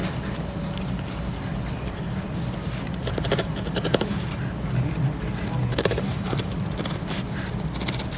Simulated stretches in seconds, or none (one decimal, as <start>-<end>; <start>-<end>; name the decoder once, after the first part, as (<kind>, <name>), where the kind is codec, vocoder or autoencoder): 3.0-4.4 (vocoder, BigVGAN v2); 5.7-7.0